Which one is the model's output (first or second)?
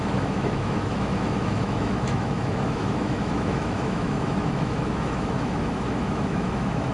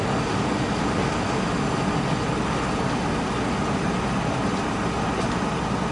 first